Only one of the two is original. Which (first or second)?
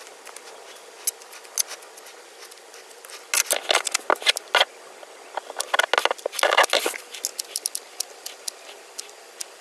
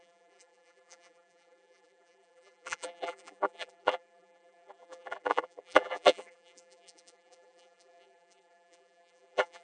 first